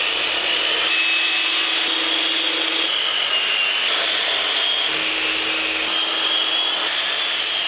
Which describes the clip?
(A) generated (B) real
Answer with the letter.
B